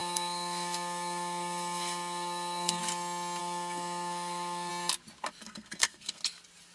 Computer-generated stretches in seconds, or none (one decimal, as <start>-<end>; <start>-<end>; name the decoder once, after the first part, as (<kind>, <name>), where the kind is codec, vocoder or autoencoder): 0.0-2.8 (codec, SNAC); 3.4-4.7; 5.4-6.2